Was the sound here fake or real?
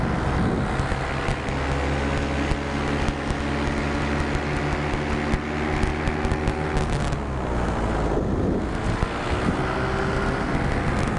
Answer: real